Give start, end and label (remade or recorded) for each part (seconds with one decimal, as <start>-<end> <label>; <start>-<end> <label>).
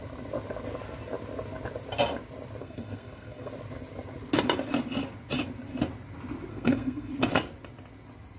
0.0-2.6 recorded; 2.6-3.5 remade; 3.5-6.5 recorded; 6.5-7.1 remade; 7.1-8.4 recorded